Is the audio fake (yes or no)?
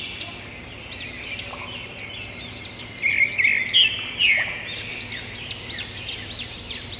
no